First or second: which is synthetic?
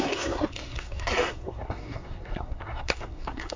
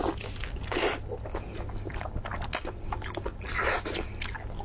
first